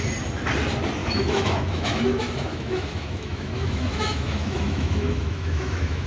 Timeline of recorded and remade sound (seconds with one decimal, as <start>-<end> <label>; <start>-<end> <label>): 0.0-1.0 recorded; 1.0-2.0 remade; 2.0-2.5 recorded; 2.5-6.1 remade